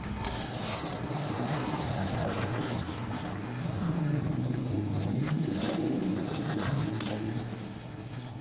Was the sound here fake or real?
fake